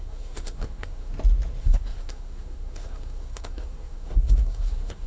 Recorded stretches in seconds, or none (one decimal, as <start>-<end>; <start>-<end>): 1.1-1.6